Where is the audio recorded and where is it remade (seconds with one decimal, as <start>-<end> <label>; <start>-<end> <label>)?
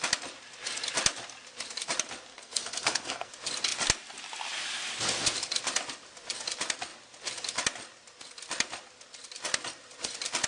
0.0-2.3 recorded; 2.3-3.3 remade; 3.3-10.5 recorded